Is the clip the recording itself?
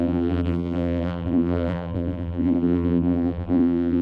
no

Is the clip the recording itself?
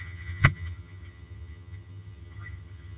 no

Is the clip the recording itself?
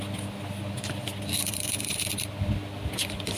yes